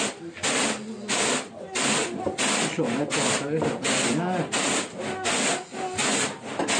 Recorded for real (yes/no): yes